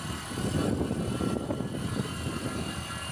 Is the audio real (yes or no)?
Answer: yes